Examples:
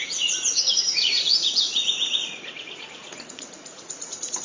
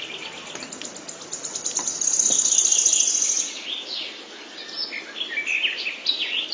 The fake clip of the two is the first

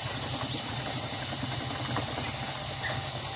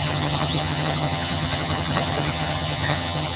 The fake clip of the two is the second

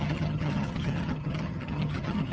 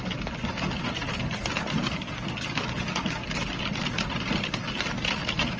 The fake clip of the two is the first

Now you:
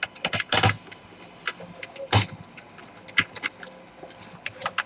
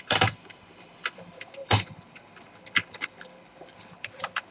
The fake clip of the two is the second